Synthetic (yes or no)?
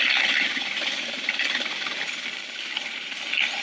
no